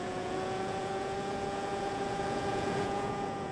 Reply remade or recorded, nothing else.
remade